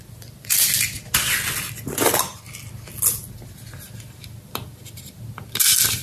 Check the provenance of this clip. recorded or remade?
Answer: recorded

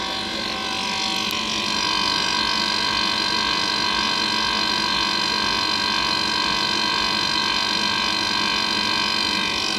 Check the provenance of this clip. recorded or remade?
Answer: recorded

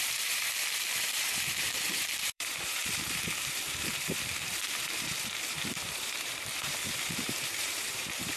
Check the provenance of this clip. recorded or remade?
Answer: remade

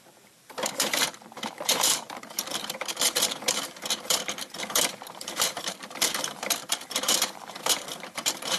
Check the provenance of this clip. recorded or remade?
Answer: remade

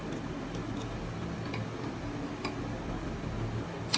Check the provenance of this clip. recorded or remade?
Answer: recorded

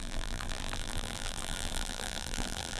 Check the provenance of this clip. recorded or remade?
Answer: remade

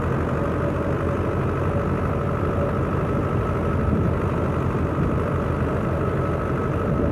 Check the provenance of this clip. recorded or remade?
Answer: recorded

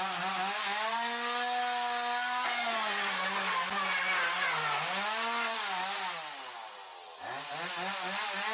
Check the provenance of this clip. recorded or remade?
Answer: recorded